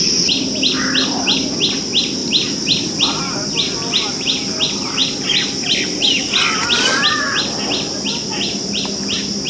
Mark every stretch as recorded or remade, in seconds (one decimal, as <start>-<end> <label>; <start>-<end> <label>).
0.0-9.5 recorded